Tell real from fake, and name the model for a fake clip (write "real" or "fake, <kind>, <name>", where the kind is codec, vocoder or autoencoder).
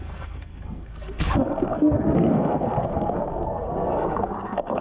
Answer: fake, codec, SNAC